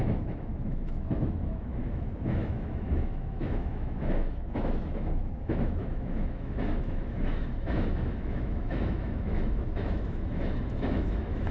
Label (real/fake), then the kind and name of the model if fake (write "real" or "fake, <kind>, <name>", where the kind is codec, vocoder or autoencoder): fake, autoencoder, DAC-VAE